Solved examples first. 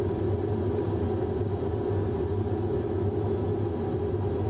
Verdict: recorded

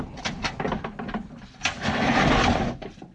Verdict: recorded